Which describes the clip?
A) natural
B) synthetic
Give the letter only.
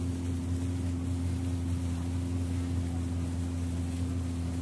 A